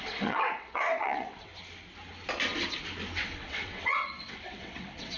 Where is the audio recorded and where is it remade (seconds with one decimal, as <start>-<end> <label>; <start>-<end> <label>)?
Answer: 0.0-1.5 remade; 1.5-3.2 recorded; 3.2-5.2 remade